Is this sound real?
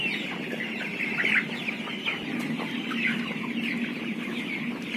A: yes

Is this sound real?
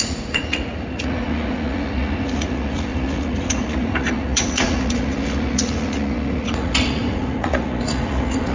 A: no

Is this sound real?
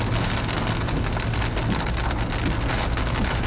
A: yes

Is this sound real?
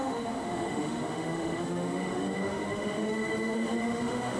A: no